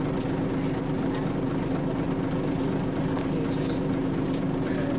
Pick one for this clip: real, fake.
real